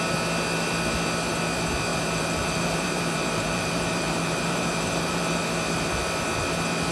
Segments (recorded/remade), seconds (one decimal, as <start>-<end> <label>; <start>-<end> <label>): 0.0-1.9 recorded; 1.9-5.4 remade; 5.4-6.9 recorded